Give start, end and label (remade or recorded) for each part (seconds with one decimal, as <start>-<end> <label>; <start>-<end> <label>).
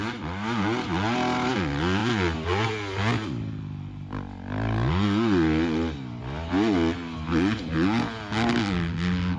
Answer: 0.0-9.4 recorded